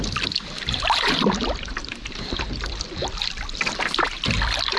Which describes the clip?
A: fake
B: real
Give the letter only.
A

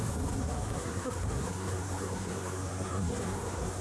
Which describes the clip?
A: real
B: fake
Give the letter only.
B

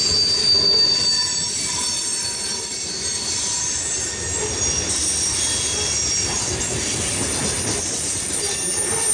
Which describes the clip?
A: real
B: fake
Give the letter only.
A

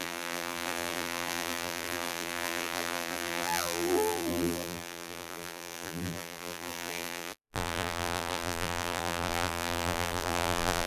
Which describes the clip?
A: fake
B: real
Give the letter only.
A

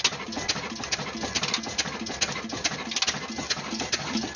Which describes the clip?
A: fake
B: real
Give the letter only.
B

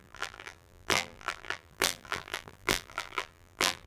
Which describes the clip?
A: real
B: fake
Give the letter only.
B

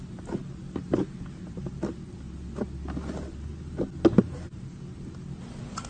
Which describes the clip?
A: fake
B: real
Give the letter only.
B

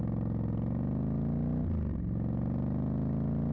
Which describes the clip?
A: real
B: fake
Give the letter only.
A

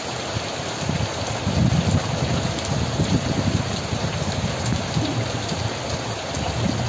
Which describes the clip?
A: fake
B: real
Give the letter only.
B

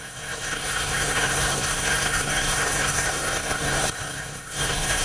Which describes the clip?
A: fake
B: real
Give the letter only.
A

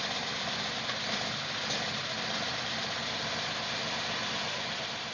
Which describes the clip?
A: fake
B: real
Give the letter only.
B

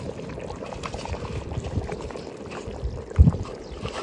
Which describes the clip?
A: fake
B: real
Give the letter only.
A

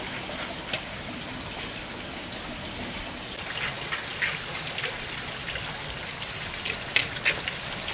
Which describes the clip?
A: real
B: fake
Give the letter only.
A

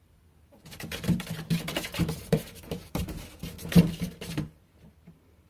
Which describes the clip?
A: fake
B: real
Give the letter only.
A